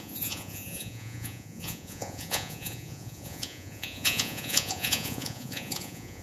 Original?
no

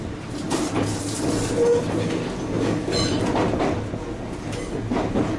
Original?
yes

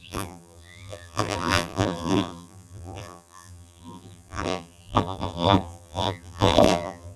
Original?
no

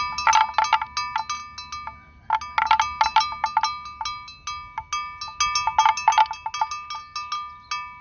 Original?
yes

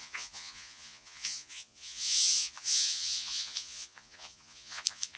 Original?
no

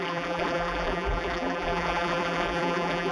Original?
no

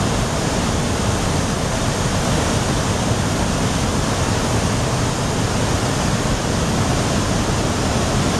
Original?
yes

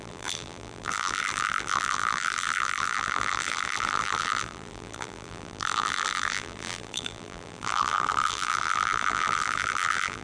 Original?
no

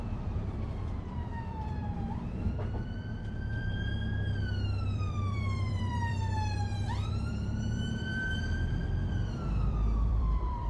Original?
no